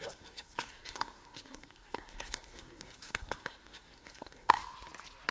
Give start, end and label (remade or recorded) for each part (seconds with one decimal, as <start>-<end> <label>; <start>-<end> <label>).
0.0-4.6 remade; 4.6-5.3 recorded